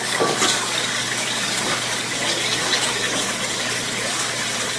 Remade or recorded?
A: remade